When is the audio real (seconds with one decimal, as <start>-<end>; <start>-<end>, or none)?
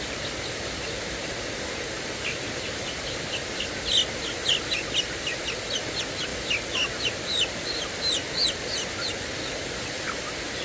0.0-10.6